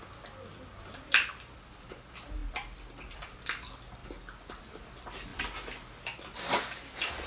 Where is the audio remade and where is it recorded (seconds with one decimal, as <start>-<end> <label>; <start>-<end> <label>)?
0.0-7.3 recorded

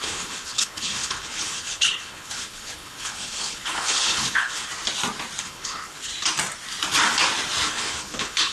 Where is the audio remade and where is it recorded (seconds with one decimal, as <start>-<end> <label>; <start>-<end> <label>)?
0.0-4.7 remade; 4.7-5.4 recorded; 5.4-6.1 remade; 6.1-7.7 recorded; 7.7-8.5 remade